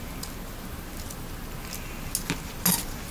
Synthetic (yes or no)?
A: no